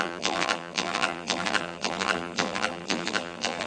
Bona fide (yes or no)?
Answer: no